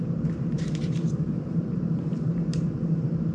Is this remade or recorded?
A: remade